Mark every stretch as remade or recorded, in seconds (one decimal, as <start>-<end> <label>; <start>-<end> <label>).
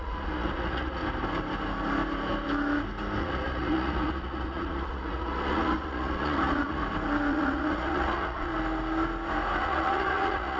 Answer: 0.0-1.0 remade; 1.0-3.2 recorded; 3.2-6.8 remade; 6.8-7.3 recorded; 7.3-8.5 remade; 8.5-9.6 recorded; 9.6-10.6 remade